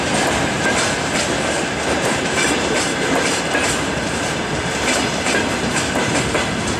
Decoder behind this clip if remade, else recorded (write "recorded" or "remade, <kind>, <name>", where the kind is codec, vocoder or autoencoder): remade, vocoder, BigVGAN v2